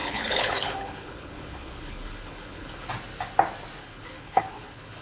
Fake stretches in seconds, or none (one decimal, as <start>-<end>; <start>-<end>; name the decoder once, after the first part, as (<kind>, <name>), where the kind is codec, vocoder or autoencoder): 0.0-2.9 (codec, HILCodec); 3.8-5.0